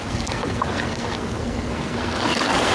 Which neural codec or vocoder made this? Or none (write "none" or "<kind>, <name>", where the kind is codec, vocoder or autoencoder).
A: codec, SNAC